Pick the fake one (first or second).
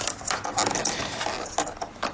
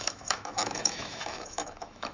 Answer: second